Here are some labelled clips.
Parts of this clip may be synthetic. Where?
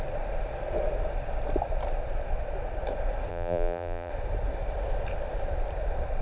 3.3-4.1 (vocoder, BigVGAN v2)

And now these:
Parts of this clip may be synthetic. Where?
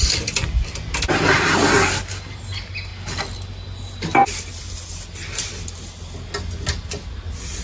none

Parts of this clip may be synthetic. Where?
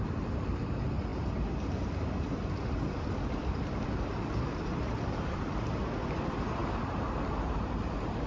0.0-8.3 (vocoder, BigVGAN v2)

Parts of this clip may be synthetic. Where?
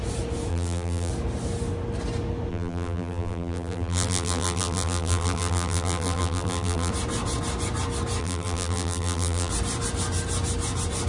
0.5-1.1 (vocoder, BigVGAN v2); 2.5-6.9; 8.2-9.5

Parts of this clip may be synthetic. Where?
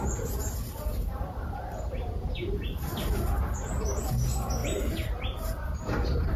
0.9-2.4 (vocoder, BigVGAN v2); 4.6-6.4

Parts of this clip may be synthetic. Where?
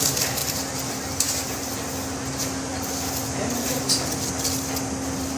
0.4-1.6 (vocoder, BigVGAN v2)